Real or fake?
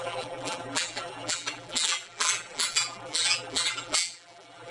fake